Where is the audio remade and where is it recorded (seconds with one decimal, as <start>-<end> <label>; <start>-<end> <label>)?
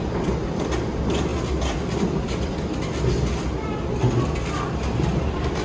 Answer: 0.0-5.6 recorded